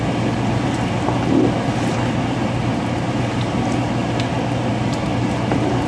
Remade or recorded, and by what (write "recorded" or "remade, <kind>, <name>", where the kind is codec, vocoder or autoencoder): recorded